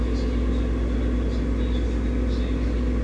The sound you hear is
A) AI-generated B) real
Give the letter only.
B